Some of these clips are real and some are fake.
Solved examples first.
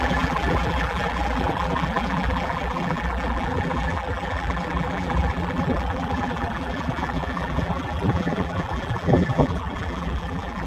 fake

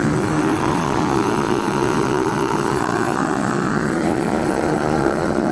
fake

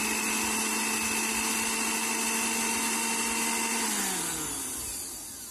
real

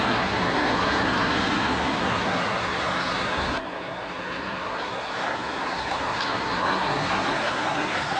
fake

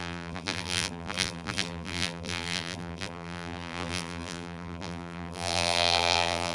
fake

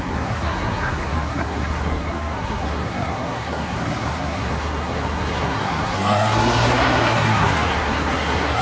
fake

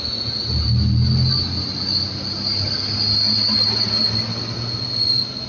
real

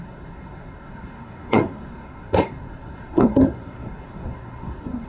fake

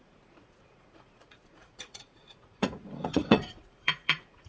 fake